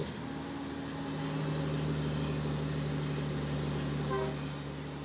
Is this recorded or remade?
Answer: recorded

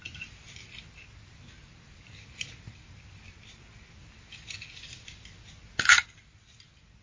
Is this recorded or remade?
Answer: recorded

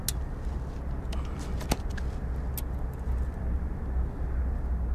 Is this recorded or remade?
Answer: recorded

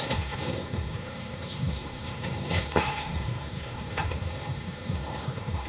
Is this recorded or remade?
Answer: remade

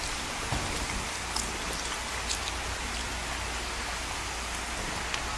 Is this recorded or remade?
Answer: recorded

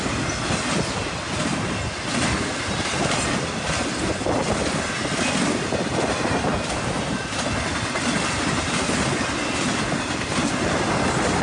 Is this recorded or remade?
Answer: recorded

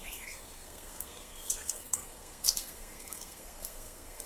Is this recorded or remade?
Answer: remade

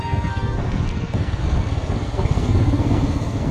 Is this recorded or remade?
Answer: remade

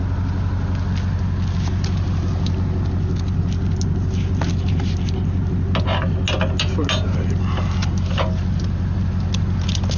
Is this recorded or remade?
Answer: recorded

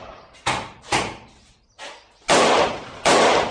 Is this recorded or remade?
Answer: recorded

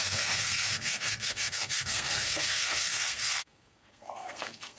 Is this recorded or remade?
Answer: remade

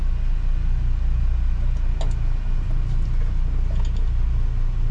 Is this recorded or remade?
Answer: recorded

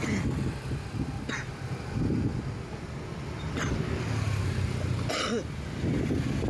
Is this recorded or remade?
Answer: recorded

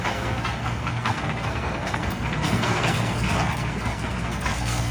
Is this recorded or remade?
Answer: remade